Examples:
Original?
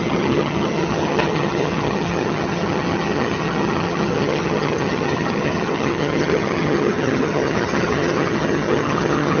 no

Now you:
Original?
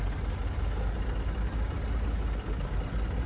yes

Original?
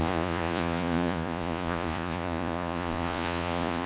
no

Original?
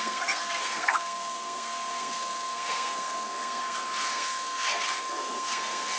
no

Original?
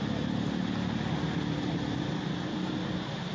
yes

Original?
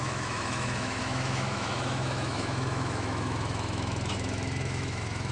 no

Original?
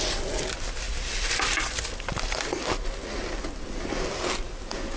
yes